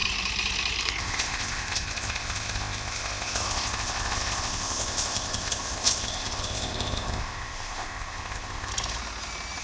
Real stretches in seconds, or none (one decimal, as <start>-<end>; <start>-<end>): 0.0-1.0; 8.7-9.6